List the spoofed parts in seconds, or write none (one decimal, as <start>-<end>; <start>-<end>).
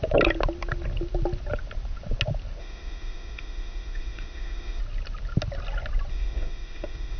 2.6-4.8; 6.1-7.2